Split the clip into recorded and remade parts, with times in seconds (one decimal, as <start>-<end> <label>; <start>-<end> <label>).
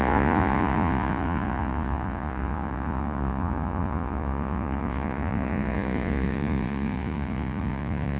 0.0-8.2 remade